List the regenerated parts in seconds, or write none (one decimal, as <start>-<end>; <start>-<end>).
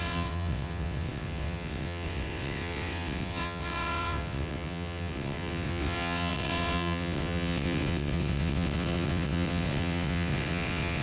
0.0-11.0